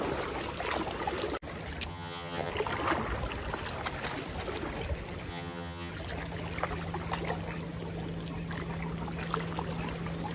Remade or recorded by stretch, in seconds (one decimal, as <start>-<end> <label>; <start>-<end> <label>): 0.0-1.9 recorded; 1.9-2.5 remade; 2.5-5.3 recorded; 5.3-5.9 remade; 5.9-10.3 recorded